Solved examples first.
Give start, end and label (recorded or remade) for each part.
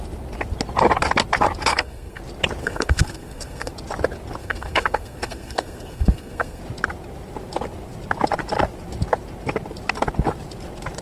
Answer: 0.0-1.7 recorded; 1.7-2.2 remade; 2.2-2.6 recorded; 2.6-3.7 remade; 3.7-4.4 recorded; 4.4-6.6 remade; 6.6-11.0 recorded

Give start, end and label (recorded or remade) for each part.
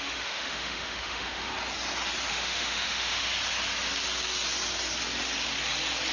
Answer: 0.0-1.5 remade; 1.5-2.3 recorded; 2.3-3.3 remade; 3.3-6.1 recorded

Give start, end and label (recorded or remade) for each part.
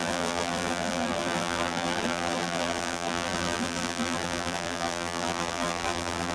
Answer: 0.0-6.3 remade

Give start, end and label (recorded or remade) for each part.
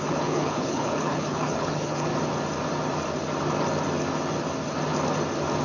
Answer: 0.0-2.1 remade; 2.1-5.6 recorded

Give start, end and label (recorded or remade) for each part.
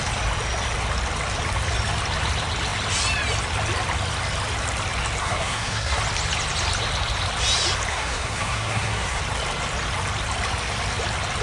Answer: 0.0-5.2 recorded; 5.2-6.0 remade; 6.0-7.9 recorded; 7.9-9.2 remade; 9.2-11.4 recorded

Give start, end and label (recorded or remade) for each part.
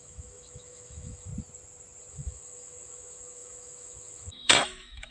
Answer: 0.0-1.3 remade; 1.3-2.1 recorded; 2.1-5.1 remade